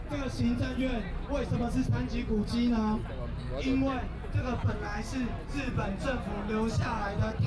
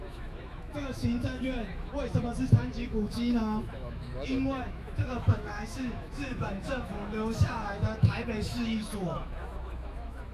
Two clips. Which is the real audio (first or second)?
first